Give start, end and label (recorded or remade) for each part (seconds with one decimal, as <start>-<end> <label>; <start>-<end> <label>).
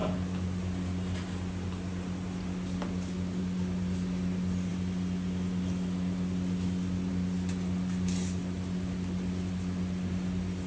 0.0-10.7 recorded